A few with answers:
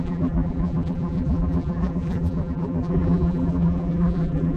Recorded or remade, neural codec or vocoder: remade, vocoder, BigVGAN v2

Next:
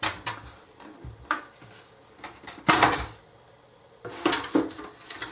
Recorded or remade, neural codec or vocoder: remade, vocoder, BigVGAN v2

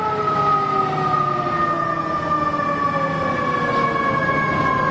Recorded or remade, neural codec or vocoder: recorded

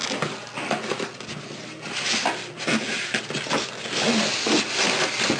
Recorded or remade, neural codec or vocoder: recorded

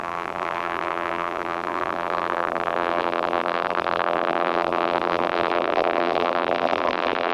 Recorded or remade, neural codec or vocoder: remade, vocoder, BigVGAN v2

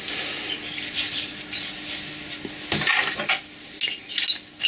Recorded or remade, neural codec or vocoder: recorded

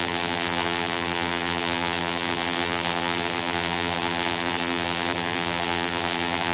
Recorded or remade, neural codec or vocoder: remade, vocoder, BigVGAN v2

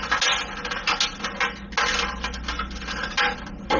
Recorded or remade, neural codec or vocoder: recorded